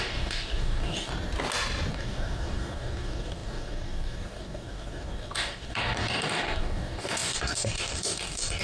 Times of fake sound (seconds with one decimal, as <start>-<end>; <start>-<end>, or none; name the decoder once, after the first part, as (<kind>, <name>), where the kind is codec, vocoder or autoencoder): 0.0-1.1 (codec, DAC); 1.9-8.6